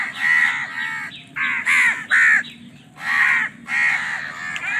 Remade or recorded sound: recorded